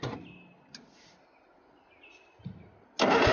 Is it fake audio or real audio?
real